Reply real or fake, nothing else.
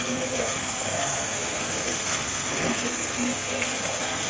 fake